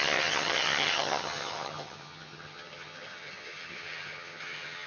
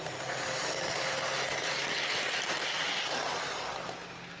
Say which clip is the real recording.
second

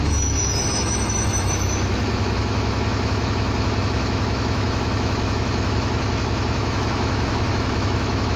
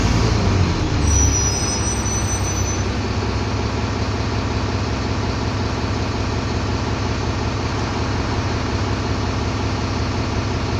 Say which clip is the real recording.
second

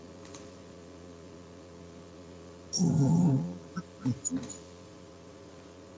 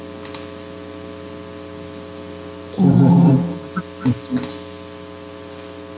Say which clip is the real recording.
second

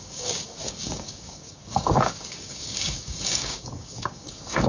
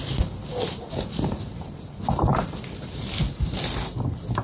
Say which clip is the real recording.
second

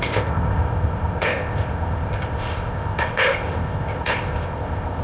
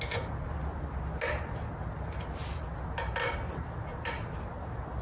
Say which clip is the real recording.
second